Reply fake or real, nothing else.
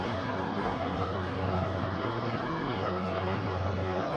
fake